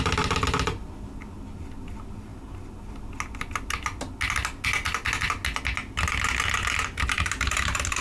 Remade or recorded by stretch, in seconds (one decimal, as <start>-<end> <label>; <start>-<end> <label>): 0.0-8.0 recorded